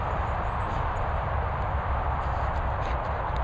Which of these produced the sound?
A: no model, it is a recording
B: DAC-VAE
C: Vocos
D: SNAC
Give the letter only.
A